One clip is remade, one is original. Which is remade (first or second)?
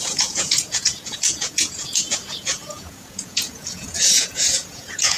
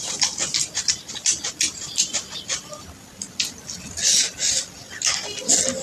first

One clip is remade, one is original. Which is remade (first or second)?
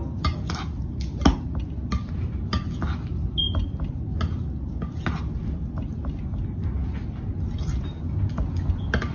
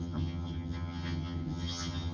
second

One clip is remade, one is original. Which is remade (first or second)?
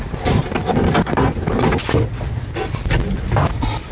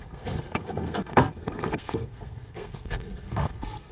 second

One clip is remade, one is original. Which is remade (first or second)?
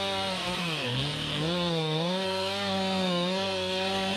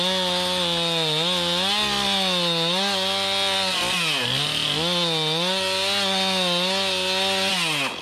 first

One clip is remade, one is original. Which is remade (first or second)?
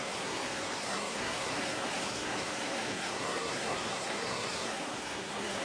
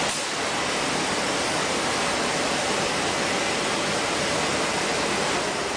first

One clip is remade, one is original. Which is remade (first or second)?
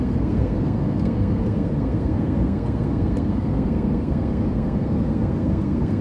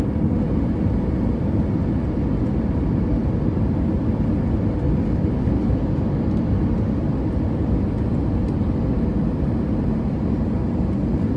first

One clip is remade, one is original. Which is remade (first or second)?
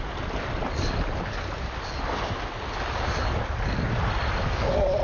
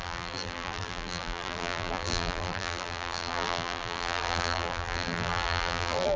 second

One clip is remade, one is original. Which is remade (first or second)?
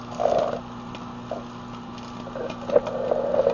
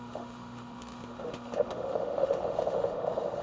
second